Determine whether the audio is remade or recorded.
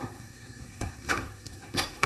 remade